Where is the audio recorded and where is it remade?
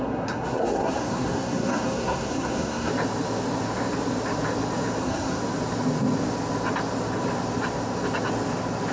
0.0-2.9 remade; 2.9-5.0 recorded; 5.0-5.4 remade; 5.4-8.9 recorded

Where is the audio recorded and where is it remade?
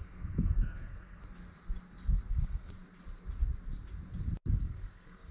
0.0-1.2 remade; 1.2-2.3 recorded; 2.3-2.7 remade; 2.7-4.6 recorded; 4.6-5.3 remade